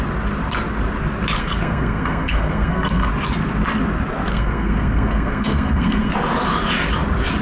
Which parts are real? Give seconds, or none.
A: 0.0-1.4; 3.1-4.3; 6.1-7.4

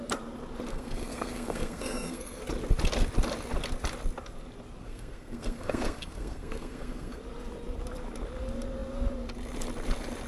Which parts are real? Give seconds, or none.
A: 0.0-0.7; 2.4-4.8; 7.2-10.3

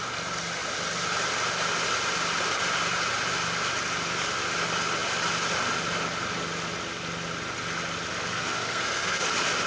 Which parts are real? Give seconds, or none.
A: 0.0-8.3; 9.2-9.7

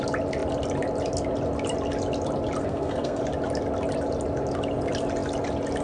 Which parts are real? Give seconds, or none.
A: 0.0-2.6; 3.2-5.8